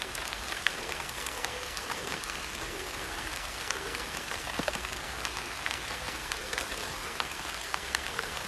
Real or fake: fake